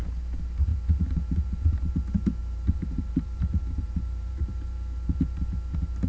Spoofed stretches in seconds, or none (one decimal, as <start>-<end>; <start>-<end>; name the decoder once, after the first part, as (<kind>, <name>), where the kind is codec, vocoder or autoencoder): 2.4-4.5 (vocoder, BigVGAN v2)